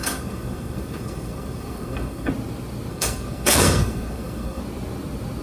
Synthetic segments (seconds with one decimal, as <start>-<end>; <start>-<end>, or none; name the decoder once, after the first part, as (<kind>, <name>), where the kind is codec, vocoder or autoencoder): 0.0-2.3 (codec, SNAC); 2.9-4.6